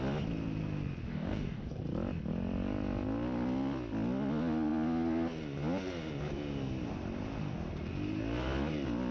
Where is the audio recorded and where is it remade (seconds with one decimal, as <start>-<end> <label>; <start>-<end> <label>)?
0.0-1.1 recorded; 1.1-1.8 remade; 1.8-9.1 recorded